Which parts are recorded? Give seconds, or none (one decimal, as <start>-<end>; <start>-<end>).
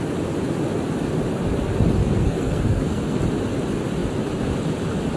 0.0-2.0; 3.2-5.2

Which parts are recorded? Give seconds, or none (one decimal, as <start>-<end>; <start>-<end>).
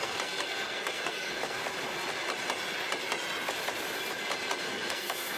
1.6-4.6